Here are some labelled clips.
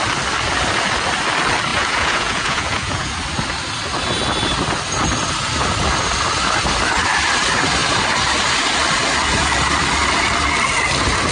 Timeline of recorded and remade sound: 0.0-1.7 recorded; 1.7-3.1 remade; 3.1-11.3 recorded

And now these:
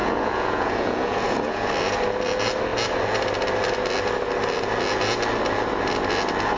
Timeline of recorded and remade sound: 0.0-1.7 remade; 1.7-6.6 recorded

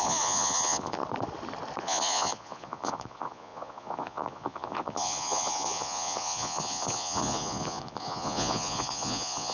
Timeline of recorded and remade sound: 0.0-1.0 remade; 1.0-1.8 recorded; 1.8-9.5 remade

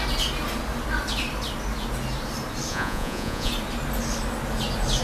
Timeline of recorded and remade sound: 0.0-2.7 recorded; 2.7-3.5 remade; 3.5-5.0 recorded

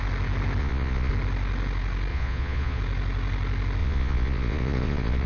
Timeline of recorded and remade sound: 0.0-0.6 recorded; 0.6-1.1 remade; 1.1-2.1 recorded; 2.1-2.8 remade; 2.8-3.8 recorded; 3.8-5.3 remade

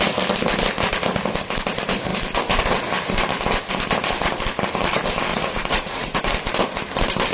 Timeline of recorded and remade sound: 0.0-5.3 recorded; 5.3-6.2 remade; 6.2-7.3 recorded

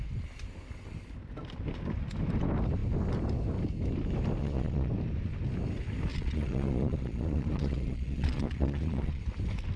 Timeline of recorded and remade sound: 0.0-4.4 recorded; 4.4-4.9 remade; 4.9-6.1 recorded; 6.1-9.2 remade; 9.2-9.8 recorded